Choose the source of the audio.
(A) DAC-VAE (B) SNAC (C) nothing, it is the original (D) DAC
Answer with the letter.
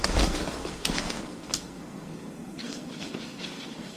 B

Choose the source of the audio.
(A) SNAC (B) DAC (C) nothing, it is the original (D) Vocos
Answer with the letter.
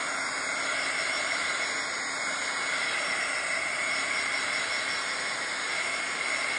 C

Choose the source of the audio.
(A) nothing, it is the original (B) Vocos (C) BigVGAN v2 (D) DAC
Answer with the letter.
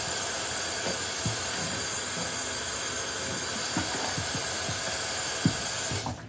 A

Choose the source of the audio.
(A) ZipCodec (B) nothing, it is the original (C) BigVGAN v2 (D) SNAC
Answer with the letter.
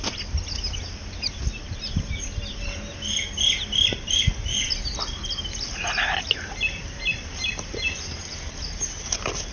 B